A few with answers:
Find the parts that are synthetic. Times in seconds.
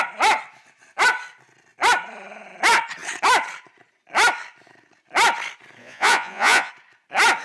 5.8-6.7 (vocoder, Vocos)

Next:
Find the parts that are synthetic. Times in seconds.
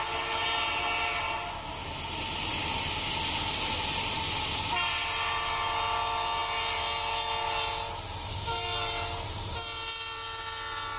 none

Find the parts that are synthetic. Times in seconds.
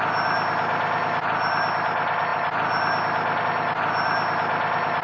none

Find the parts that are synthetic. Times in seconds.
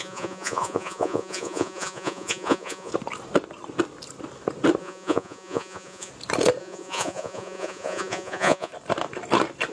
0.0-2.9 (vocoder, Vocos); 4.8-6.1; 6.6-8.7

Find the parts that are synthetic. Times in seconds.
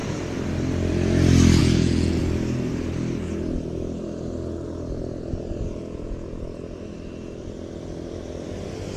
1.6-2.2 (vocoder, Vocos)